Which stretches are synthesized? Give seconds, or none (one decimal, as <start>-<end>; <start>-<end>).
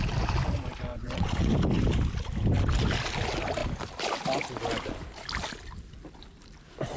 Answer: 0.9-1.5